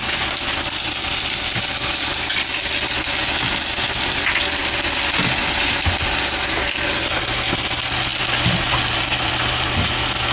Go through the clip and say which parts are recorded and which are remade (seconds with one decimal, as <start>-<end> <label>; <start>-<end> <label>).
0.0-10.3 recorded